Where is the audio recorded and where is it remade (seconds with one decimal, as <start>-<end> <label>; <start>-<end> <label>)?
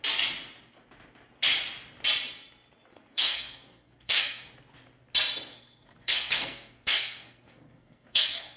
0.0-2.9 recorded; 2.9-4.5 remade; 4.5-5.5 recorded; 5.5-8.6 remade